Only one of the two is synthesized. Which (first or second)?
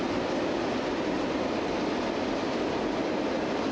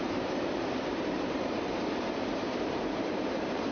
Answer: second